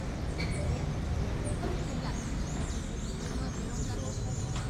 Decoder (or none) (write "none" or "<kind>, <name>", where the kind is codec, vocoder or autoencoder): none